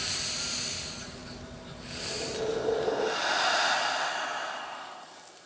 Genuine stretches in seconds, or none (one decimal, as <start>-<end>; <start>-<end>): 0.0-5.5